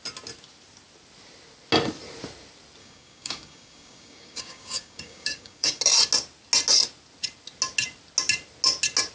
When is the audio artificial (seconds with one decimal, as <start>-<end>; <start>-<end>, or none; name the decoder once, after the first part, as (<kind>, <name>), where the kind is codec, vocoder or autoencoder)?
2.8-5.8 (codec, DAC)